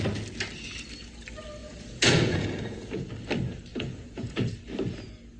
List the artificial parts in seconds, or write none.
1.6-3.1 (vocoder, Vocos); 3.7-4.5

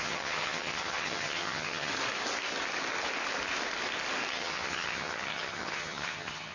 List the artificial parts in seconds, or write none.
0.0-1.9 (vocoder, HiFi-GAN); 4.3-6.5

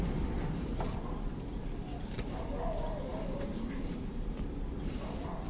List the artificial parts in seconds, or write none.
3.1-4.5 (vocoder, BigVGAN v2)

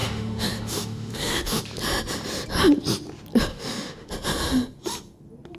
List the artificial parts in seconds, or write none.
0.0-1.6 (autoencoder, DAC-VAE); 3.5-4.1